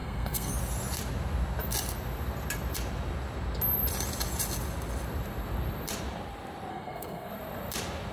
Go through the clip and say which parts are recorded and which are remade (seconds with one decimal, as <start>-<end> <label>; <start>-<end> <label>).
0.0-0.5 remade; 0.5-6.7 recorded; 6.7-7.3 remade; 7.3-8.1 recorded